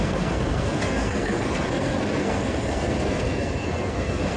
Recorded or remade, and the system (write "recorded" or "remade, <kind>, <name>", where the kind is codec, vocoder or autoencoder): remade, codec, SNAC